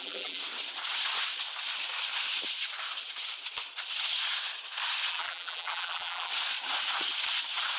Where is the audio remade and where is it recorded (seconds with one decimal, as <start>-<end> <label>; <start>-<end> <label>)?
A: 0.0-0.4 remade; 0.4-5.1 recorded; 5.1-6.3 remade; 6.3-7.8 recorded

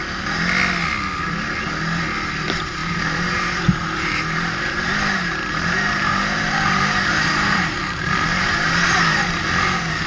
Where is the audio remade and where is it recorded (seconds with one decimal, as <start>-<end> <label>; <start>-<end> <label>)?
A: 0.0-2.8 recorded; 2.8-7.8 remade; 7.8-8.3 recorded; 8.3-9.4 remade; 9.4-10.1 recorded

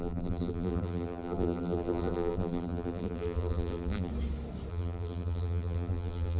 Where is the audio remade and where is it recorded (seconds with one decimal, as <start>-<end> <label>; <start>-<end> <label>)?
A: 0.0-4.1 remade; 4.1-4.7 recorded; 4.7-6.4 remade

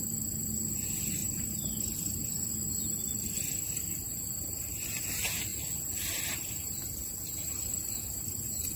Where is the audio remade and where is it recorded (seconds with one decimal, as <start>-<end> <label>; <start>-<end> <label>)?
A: 0.0-8.8 remade

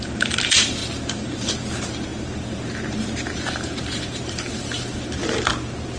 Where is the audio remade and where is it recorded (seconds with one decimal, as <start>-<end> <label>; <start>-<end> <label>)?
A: 0.0-5.2 remade; 5.2-6.0 recorded

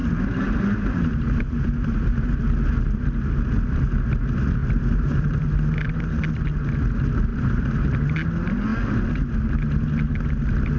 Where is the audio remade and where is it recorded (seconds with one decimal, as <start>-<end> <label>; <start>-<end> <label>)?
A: 0.0-2.4 remade; 2.4-4.6 recorded; 4.6-6.2 remade; 6.2-7.3 recorded; 7.3-7.9 remade; 7.9-10.8 recorded

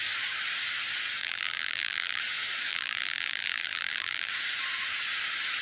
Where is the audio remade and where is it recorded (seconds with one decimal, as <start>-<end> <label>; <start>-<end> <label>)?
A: 0.0-1.2 recorded; 1.2-2.2 remade; 2.2-2.7 recorded; 2.7-4.3 remade; 4.3-5.6 recorded